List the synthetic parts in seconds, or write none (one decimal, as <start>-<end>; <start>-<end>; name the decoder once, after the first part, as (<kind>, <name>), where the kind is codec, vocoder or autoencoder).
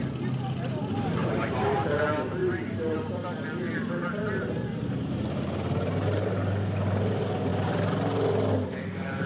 1.2-2.0 (vocoder, BigVGAN v2); 2.4-3.1